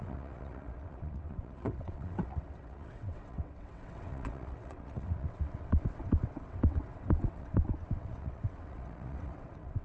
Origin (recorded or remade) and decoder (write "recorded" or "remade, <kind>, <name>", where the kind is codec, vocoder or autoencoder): remade, vocoder, WaveNeXt